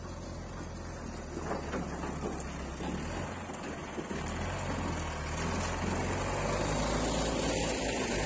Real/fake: real